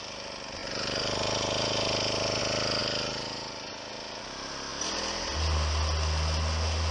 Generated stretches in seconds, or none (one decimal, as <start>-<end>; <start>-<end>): 0.6-2.4; 2.8-3.7